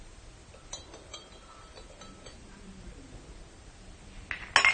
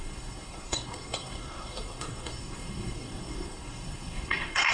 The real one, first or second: first